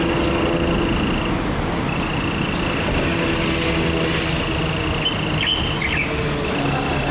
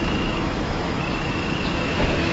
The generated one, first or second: second